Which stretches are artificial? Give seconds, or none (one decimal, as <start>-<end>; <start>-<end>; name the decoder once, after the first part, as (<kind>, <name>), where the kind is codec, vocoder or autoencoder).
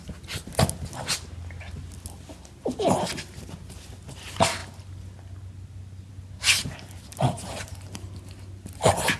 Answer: none